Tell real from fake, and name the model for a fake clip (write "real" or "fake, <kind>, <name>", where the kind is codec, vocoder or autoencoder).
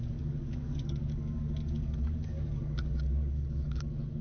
fake, codec, DAC